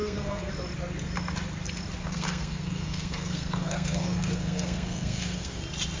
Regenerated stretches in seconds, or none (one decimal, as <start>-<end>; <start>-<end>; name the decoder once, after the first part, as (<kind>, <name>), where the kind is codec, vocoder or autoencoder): 0.0-0.5 (codec, SNAC); 2.0-5.6